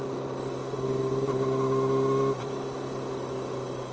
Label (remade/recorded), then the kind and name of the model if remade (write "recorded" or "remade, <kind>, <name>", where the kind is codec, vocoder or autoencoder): recorded